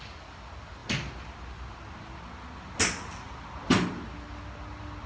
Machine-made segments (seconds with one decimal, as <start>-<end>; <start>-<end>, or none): none